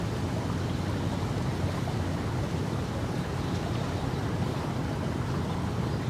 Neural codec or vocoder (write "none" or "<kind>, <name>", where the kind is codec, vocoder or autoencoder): none